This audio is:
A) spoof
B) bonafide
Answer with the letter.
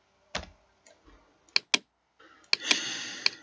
B